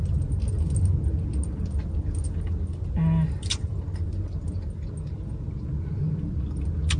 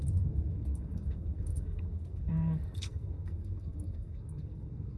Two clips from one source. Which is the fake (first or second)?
second